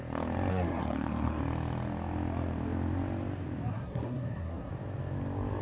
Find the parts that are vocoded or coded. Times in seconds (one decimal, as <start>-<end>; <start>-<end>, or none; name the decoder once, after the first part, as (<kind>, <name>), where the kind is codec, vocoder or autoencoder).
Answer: 0.5-1.4 (codec, SNAC); 3.7-4.7